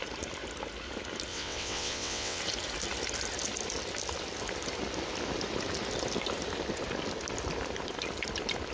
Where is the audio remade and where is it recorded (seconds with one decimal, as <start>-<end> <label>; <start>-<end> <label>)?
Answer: 0.0-1.3 recorded; 1.3-2.4 remade; 2.4-8.7 recorded